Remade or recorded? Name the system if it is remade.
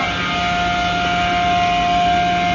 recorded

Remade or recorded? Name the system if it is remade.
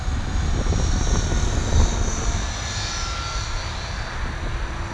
recorded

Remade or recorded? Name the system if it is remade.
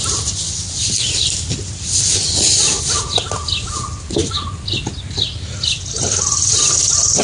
recorded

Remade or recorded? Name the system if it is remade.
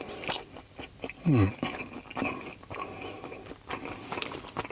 recorded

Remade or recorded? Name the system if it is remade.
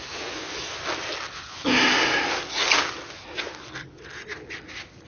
recorded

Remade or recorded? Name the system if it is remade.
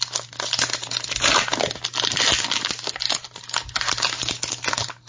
recorded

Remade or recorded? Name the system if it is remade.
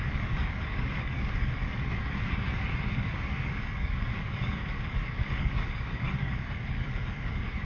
remade, codec, DAC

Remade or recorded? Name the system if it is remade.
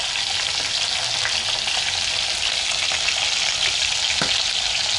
recorded